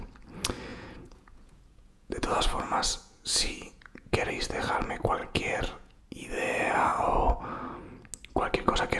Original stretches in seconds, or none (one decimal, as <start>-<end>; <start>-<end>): 0.0-0.7; 4.3-5.2; 6.0-9.0